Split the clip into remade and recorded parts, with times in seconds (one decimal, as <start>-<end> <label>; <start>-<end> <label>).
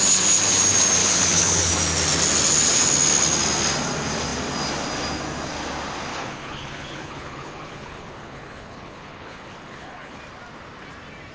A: 0.0-1.0 recorded; 1.0-1.7 remade; 1.7-6.1 recorded; 6.1-10.2 remade; 10.2-11.3 recorded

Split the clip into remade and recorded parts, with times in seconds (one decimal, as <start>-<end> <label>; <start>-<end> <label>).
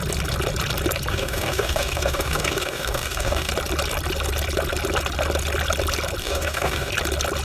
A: 0.0-1.1 recorded; 1.1-3.5 remade; 3.5-6.2 recorded; 6.2-6.9 remade; 6.9-7.4 recorded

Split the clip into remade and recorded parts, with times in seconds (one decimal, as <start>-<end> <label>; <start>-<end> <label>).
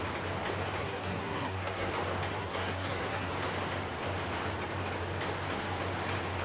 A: 0.0-0.8 recorded; 0.8-1.9 remade; 1.9-2.3 recorded; 2.3-3.3 remade; 3.3-6.4 recorded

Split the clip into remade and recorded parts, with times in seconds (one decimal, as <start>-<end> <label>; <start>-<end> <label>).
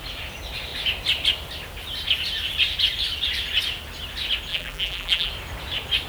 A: 0.0-4.5 recorded; 4.5-5.3 remade; 5.3-6.1 recorded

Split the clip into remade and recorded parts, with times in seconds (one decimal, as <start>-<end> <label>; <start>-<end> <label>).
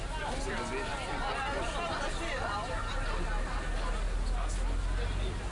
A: 0.0-5.5 recorded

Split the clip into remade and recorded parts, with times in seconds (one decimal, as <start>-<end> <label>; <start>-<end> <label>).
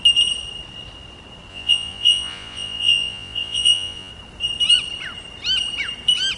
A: 0.0-1.5 recorded; 1.5-4.1 remade; 4.1-6.4 recorded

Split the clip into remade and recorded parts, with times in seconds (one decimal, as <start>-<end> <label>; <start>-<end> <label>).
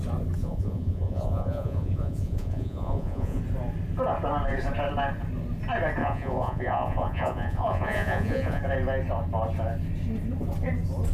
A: 0.0-0.4 recorded; 0.4-3.4 remade; 3.4-6.0 recorded; 6.0-8.6 remade; 8.6-11.1 recorded